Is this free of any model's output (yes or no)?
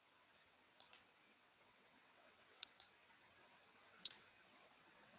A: no